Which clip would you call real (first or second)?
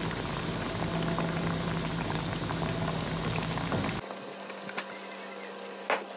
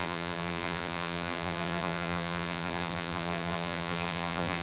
first